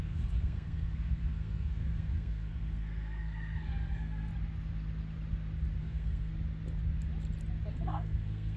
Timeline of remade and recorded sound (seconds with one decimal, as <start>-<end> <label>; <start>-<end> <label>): 0.0-4.3 remade; 4.3-5.8 recorded; 5.8-6.3 remade; 6.3-7.7 recorded; 7.7-8.6 remade

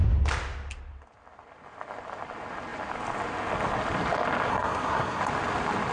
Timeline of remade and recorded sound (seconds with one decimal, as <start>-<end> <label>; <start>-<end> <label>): 0.0-4.5 recorded; 4.5-5.2 remade; 5.2-5.9 recorded

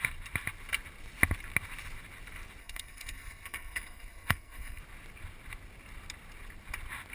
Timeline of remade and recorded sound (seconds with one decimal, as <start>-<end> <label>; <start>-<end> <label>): 0.0-2.6 recorded; 2.6-4.8 remade; 4.8-7.1 recorded

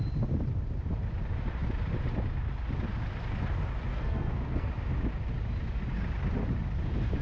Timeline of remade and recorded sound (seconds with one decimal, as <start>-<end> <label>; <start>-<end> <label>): 0.0-3.9 recorded; 3.9-4.7 remade; 4.7-7.2 recorded

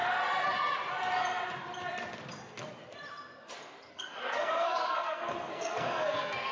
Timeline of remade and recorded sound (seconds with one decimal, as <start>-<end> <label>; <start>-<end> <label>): 0.0-3.9 recorded; 3.9-6.5 remade